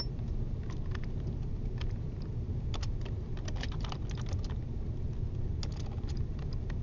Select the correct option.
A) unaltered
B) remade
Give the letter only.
A